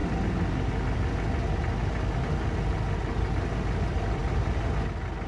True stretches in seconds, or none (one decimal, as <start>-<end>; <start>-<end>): 0.0-5.3